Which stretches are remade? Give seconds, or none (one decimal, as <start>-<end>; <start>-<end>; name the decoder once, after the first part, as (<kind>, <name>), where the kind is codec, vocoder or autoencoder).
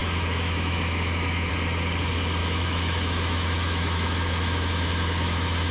0.0-1.5 (autoencoder, DAC-VAE); 2.4-5.7